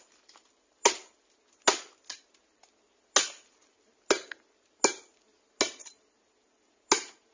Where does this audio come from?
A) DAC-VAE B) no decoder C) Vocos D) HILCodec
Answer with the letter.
B